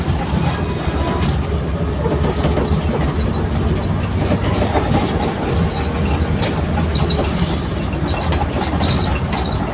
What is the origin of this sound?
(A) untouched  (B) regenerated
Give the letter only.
A